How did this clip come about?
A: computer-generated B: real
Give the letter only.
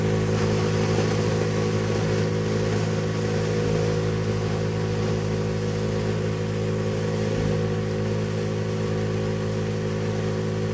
B